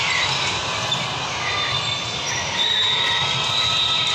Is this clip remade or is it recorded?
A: recorded